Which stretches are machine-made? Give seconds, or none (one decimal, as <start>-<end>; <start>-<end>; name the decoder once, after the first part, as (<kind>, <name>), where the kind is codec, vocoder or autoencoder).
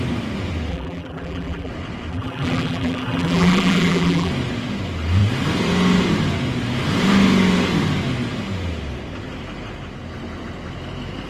0.7-1.7 (vocoder, BigVGAN v2); 2.1-4.3